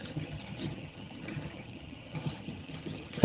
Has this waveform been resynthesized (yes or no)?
yes